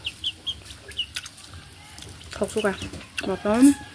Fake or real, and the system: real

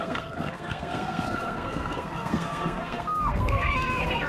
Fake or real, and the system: fake, codec, SNAC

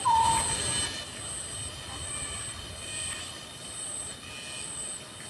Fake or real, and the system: real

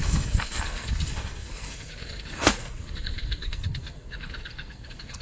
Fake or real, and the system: fake, codec, SNAC